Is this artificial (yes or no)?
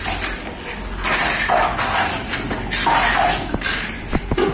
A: no